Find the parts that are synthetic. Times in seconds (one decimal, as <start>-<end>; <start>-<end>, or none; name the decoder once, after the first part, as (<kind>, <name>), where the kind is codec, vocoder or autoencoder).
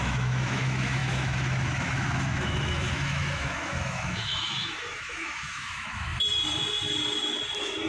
0.0-6.1 (autoencoder, DAC-VAE)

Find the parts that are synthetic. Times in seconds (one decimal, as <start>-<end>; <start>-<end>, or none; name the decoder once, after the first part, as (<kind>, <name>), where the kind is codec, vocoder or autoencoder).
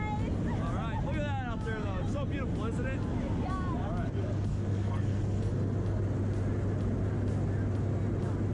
4.5-5.5 (codec, SNAC)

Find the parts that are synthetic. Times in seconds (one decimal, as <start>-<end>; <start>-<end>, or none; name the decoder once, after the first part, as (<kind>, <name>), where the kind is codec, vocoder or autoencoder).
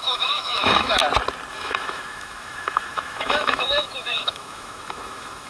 0.0-1.0 (autoencoder, DAC-VAE); 1.5-5.5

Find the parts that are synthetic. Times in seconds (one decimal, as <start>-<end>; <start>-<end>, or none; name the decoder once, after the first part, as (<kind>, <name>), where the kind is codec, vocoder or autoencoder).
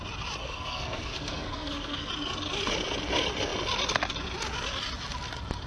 0.4-2.1 (codec, SNAC)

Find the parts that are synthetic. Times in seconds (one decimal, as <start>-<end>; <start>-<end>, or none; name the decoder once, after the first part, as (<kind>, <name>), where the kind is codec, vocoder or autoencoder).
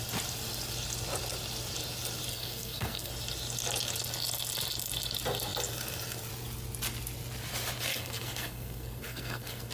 2.3-3.1 (codec, SNAC); 7.9-9.7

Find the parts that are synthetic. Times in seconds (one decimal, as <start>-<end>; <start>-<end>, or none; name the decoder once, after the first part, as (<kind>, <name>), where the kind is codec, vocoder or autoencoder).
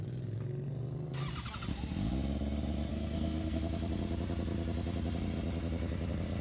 2.9-3.6 (codec, SNAC)